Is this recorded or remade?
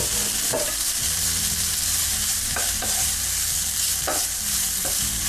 remade